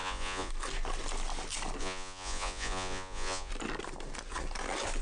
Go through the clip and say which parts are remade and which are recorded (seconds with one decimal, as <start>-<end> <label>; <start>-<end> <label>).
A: 0.0-0.5 remade; 0.5-1.8 recorded; 1.8-3.5 remade; 3.5-5.0 recorded